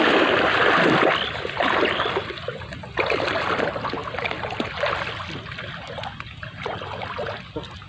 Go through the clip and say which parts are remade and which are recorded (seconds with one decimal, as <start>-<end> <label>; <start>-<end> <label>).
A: 0.0-7.9 recorded